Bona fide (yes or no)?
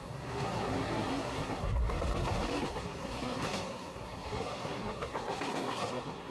no